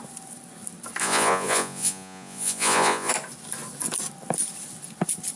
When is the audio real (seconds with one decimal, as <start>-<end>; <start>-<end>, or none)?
0.0-1.0; 3.1-5.4